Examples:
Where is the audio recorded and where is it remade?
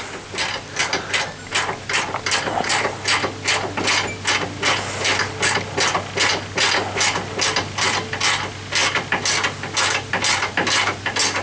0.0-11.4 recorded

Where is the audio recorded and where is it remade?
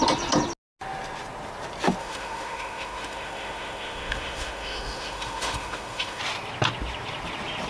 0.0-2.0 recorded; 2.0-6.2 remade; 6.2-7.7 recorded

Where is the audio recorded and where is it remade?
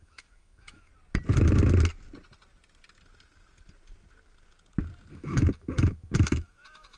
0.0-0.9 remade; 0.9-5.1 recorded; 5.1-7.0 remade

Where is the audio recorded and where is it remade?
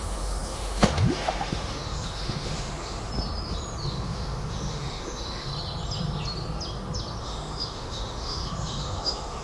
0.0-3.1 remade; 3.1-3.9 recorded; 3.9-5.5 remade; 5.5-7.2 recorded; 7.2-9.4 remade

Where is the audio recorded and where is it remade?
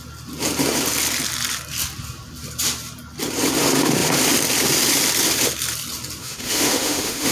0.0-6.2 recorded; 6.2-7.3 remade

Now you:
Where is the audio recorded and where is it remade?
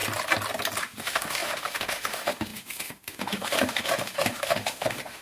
0.0-0.8 recorded; 0.8-5.2 remade